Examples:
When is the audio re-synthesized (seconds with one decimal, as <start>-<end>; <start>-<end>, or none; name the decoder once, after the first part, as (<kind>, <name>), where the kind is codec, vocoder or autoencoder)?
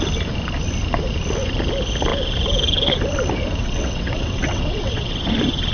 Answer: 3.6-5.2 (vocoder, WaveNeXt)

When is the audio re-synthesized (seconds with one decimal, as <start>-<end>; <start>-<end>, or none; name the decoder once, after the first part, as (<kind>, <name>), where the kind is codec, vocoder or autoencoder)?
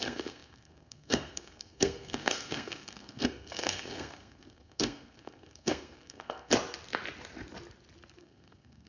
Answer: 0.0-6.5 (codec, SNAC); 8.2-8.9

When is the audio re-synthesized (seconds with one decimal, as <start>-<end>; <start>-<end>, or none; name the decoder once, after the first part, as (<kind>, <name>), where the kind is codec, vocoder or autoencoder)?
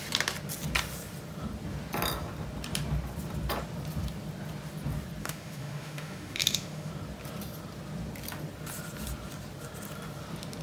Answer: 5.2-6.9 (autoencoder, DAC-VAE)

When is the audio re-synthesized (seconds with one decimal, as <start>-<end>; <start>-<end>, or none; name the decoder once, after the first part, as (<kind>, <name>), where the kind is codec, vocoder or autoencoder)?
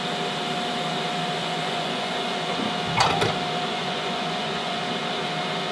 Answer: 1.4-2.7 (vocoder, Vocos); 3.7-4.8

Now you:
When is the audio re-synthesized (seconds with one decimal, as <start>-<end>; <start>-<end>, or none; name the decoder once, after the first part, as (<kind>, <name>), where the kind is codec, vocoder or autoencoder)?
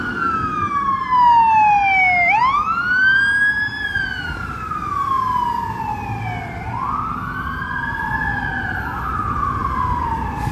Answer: none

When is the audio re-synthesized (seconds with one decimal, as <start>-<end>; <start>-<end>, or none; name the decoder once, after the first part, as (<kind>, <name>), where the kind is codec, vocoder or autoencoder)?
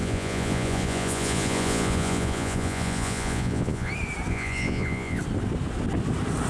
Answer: 0.0-3.9 (vocoder, Vocos); 4.3-5.2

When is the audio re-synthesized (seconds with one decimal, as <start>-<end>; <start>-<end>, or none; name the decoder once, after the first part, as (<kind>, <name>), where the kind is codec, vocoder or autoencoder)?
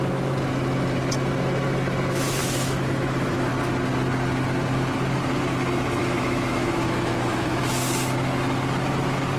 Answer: 2.4-3.5 (autoencoder, DAC-VAE); 6.0-7.6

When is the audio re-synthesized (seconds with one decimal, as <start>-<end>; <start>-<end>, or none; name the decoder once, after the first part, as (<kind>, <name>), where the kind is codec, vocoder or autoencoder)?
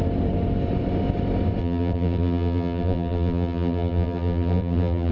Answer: 1.6-5.1 (vocoder, BigVGAN v2)